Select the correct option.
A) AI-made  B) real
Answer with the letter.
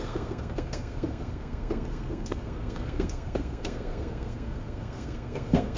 A